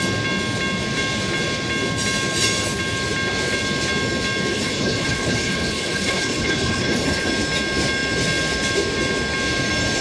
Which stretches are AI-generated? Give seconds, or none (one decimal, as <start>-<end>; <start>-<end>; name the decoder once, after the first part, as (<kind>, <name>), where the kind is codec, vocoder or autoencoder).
4.5-7.3 (codec, HILCodec)